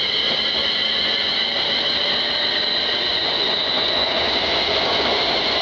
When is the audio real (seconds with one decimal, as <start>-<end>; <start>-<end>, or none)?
0.0-0.6; 1.4-3.1